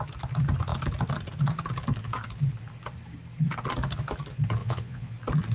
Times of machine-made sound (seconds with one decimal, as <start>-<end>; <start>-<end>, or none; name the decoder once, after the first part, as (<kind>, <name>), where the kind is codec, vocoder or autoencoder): 4.6-5.1 (vocoder, Vocos)